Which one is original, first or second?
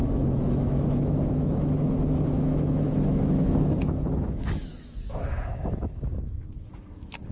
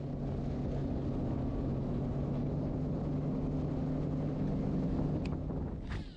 second